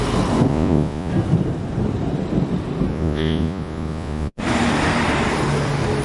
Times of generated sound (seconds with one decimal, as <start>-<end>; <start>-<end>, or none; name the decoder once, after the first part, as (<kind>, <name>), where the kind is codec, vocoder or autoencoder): 0.5-1.1 (vocoder, Vocos); 2.9-4.4